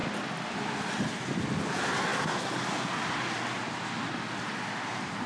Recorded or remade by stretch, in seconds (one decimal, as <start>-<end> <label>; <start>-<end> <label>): 0.0-5.3 recorded